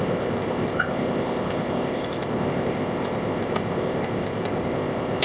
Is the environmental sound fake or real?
fake